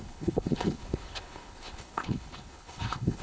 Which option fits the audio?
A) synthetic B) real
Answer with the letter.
A